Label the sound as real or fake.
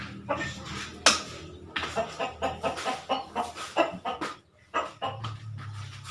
real